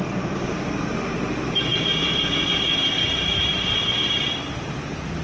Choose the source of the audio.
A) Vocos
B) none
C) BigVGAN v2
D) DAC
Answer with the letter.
C